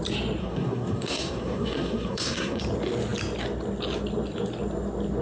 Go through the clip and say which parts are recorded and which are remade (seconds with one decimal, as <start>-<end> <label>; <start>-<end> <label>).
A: 0.0-0.4 recorded; 0.4-2.6 remade; 2.6-5.2 recorded